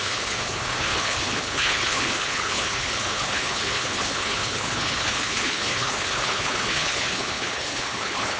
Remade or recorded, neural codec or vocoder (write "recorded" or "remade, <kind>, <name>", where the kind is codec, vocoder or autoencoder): remade, codec, HILCodec